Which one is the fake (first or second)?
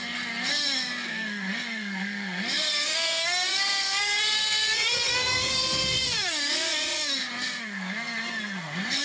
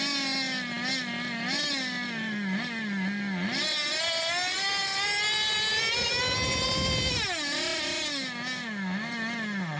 first